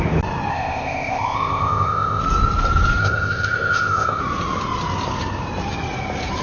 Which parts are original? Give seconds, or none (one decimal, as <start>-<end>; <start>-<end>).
0.0-0.5; 2.2-3.0; 4.2-6.4